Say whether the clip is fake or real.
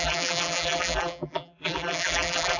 fake